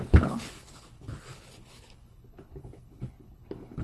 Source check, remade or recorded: remade